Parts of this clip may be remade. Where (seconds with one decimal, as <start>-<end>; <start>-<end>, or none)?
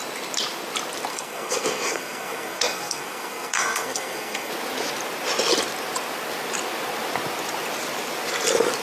1.1-4.5